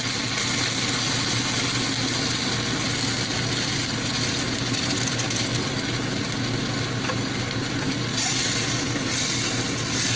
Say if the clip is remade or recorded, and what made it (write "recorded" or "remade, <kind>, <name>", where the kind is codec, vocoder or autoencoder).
recorded